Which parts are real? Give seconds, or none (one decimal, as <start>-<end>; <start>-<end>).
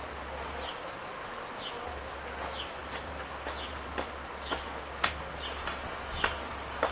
0.0-6.9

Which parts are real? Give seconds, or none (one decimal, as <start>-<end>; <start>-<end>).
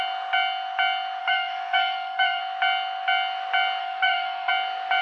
0.0-1.2; 2.4-3.8; 4.5-5.0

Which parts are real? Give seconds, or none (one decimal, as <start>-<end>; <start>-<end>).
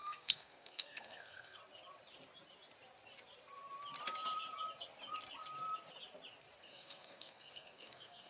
1.6-6.6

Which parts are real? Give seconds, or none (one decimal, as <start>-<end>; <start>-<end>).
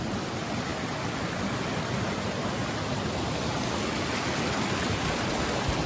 0.0-5.9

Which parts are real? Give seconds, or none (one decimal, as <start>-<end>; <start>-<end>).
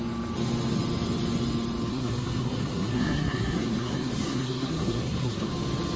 0.0-1.9; 5.5-6.0